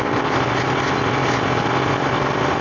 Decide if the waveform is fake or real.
real